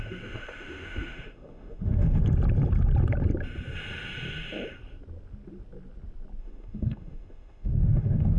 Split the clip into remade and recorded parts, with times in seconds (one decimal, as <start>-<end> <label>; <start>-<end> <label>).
0.0-2.2 remade; 2.2-6.4 recorded; 6.4-8.4 remade